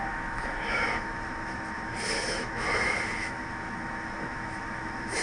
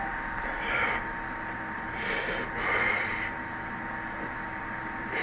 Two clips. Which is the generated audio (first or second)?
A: first